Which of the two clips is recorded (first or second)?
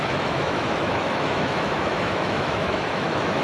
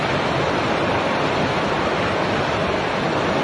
second